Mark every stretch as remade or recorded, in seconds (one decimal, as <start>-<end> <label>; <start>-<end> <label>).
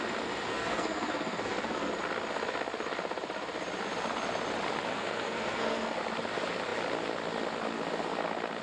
0.0-0.5 recorded; 0.5-1.9 remade; 1.9-4.9 recorded; 4.9-6.0 remade; 6.0-8.6 recorded